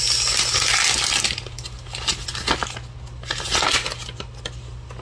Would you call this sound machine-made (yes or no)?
no